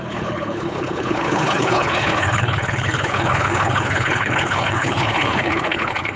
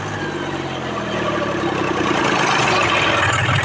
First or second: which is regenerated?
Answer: first